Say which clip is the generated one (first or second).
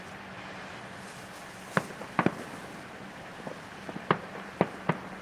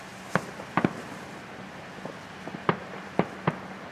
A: first